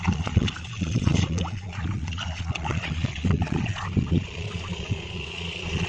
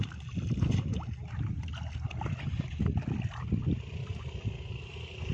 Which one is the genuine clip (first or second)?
second